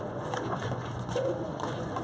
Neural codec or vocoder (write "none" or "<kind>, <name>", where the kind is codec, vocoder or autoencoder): vocoder, Vocos